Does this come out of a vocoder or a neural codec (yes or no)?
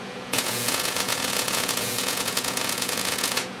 yes